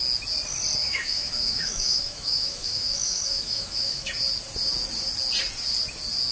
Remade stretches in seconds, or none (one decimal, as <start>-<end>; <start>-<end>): 0.8-4.1